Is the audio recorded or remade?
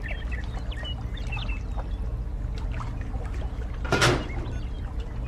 recorded